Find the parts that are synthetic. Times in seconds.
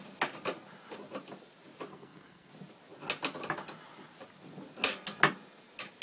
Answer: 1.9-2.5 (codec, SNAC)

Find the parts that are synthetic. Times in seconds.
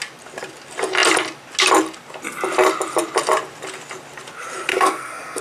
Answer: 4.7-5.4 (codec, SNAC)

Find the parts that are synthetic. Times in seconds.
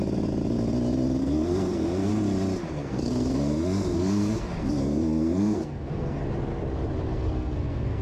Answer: 1.2-2.1 (codec, SNAC); 2.6-6.2; 7.1-8.0